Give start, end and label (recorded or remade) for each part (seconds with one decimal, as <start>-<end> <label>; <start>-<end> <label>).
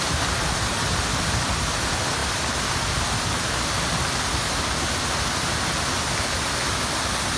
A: 0.0-7.4 recorded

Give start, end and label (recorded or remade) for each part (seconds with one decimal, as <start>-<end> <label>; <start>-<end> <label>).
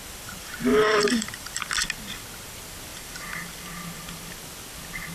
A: 0.0-0.7 recorded; 0.7-1.7 remade; 1.7-2.9 recorded; 2.9-3.6 remade; 3.6-5.1 recorded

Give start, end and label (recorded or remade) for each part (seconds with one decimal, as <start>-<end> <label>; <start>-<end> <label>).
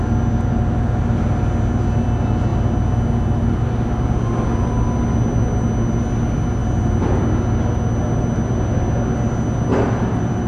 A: 0.0-9.7 recorded; 9.7-10.5 remade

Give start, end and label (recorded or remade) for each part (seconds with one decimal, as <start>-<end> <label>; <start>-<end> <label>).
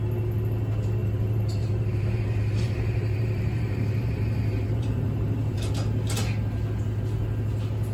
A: 0.0-1.0 recorded; 1.0-5.7 remade; 5.7-7.9 recorded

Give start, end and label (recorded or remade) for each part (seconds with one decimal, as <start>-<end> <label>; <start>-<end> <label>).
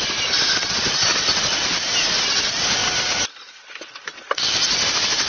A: 0.0-1.1 recorded; 1.1-2.2 remade; 2.2-2.8 recorded; 2.8-3.4 remade; 3.4-5.3 recorded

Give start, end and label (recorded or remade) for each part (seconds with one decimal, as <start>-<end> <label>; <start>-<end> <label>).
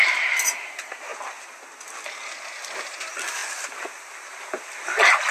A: 0.0-1.1 remade; 1.1-2.7 recorded; 2.7-3.4 remade; 3.4-5.3 recorded